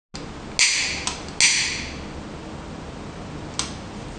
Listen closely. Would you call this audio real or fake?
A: real